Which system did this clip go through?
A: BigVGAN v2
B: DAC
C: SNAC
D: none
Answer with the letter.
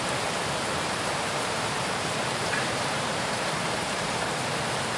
A